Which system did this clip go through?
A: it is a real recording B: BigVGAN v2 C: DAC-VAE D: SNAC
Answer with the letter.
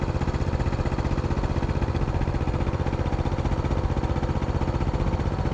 A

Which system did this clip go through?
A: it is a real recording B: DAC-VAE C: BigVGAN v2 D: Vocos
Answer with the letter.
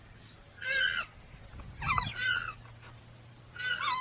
A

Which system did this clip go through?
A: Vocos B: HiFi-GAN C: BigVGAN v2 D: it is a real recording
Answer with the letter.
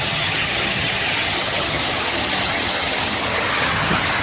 B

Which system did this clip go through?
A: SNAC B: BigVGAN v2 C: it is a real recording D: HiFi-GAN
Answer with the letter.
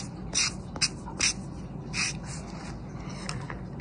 C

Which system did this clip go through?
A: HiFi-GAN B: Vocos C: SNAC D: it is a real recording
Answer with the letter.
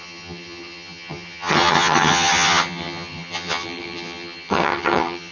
A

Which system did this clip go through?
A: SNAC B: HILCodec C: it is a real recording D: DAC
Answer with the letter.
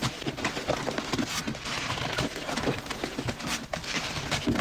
C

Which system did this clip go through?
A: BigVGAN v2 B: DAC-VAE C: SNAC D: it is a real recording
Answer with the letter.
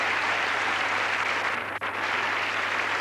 D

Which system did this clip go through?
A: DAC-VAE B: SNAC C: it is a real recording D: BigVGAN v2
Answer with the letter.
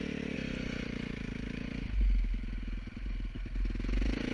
C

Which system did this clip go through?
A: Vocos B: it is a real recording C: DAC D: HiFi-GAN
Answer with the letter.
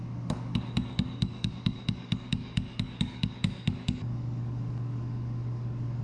C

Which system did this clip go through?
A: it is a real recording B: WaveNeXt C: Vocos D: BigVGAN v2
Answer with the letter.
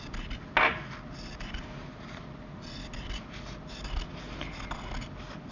A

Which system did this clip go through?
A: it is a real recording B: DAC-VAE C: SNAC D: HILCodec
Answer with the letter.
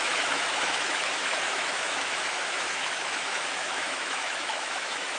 B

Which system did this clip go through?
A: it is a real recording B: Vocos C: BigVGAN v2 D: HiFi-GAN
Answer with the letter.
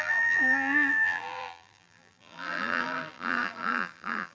C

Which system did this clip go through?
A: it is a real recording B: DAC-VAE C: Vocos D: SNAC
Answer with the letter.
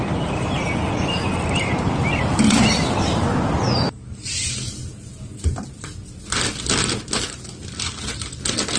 A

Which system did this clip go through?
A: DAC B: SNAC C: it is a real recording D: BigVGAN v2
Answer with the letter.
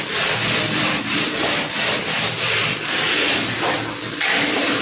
C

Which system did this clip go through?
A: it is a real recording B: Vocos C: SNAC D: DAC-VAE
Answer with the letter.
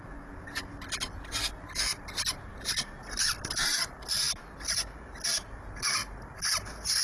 A